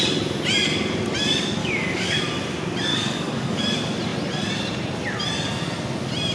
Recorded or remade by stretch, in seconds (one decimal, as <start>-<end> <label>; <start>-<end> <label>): 0.0-1.6 recorded; 1.6-2.2 remade; 2.2-2.9 recorded; 2.9-3.6 remade; 3.6-6.3 recorded